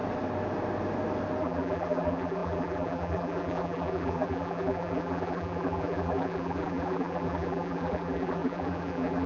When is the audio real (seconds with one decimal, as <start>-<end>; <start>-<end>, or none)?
0.0-1.4